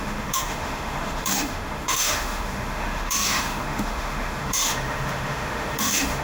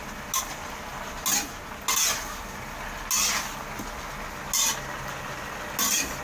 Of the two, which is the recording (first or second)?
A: second